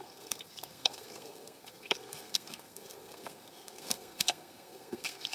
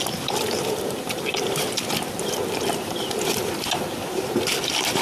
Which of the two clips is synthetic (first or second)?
first